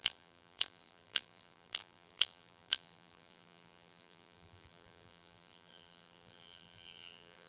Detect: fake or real fake